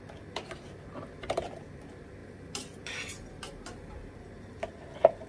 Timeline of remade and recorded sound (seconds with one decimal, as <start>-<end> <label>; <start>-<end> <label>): 0.0-5.3 recorded